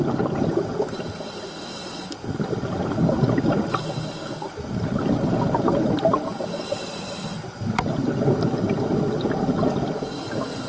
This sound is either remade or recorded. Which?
recorded